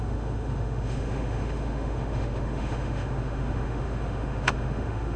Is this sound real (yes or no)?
no